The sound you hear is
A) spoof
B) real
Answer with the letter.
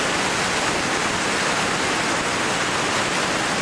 B